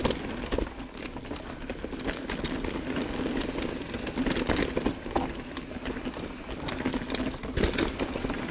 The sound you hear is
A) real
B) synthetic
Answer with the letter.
A